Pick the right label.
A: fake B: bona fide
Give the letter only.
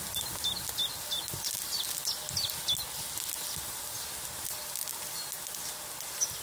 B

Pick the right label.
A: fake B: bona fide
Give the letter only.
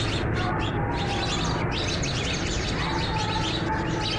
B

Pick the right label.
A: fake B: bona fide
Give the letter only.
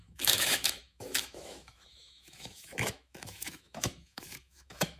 A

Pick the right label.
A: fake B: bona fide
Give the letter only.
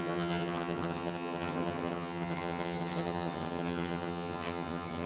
A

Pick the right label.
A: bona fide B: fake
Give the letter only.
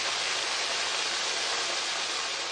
A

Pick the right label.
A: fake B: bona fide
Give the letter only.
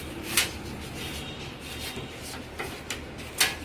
B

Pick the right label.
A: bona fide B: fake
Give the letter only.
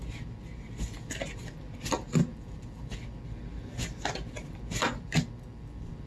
A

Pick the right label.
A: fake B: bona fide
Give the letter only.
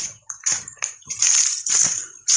B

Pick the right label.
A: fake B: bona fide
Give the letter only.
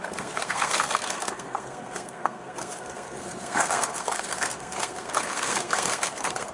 A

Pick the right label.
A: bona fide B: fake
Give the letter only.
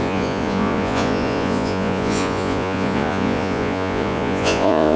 B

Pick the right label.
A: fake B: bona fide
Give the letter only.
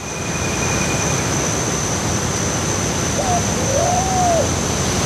B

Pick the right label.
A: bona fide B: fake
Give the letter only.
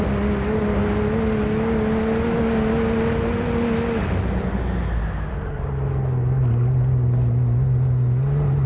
A